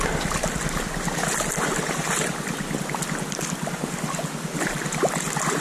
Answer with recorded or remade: recorded